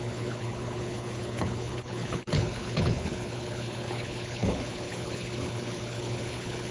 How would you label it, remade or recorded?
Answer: remade